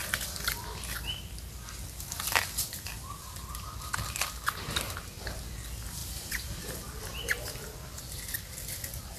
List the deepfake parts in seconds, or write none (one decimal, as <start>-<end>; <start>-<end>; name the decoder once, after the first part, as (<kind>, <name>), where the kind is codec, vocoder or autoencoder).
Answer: 6.0-6.8 (vocoder, BigVGAN v2)